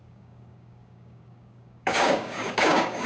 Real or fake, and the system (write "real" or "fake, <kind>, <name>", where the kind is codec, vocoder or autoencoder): fake, codec, DAC